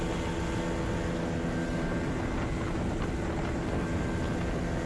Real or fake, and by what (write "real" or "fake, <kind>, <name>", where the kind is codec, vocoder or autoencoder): real